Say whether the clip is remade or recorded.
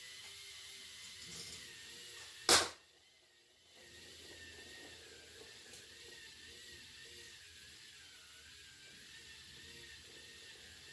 recorded